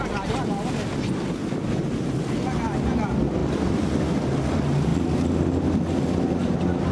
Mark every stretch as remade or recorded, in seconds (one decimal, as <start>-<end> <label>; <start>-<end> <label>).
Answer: 0.0-1.4 recorded; 1.4-2.3 remade; 2.3-6.9 recorded

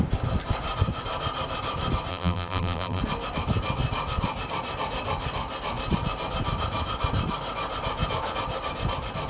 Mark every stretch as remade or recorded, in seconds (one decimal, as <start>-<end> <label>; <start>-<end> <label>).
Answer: 0.0-2.1 recorded; 2.1-3.0 remade; 3.0-9.3 recorded

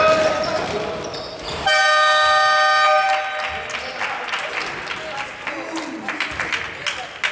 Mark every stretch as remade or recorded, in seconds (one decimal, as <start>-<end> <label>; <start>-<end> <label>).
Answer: 0.0-7.3 recorded

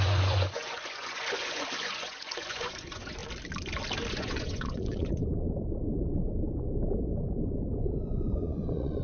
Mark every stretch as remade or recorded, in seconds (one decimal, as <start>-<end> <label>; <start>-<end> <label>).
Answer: 0.0-3.2 remade; 3.2-4.1 recorded; 4.1-5.2 remade; 5.2-8.0 recorded; 8.0-9.0 remade

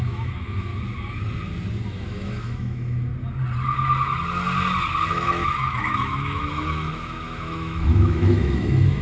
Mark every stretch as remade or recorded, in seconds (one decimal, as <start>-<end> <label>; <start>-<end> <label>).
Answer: 0.0-0.7 remade; 0.7-1.9 recorded; 1.9-3.1 remade; 3.1-5.1 recorded; 5.1-9.0 remade

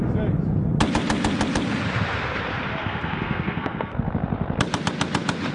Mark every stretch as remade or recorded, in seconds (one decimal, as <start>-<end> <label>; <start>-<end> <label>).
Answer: 0.0-2.8 recorded; 2.8-4.1 remade; 4.1-5.5 recorded

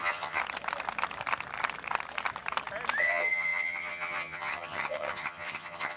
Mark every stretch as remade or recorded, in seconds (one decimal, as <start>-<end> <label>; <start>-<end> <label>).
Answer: 0.0-0.4 remade; 0.4-3.0 recorded; 3.0-6.0 remade

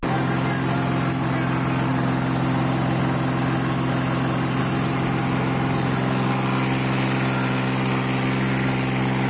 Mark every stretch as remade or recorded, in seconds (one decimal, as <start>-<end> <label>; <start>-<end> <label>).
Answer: 0.0-9.3 recorded